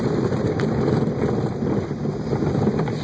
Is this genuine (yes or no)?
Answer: no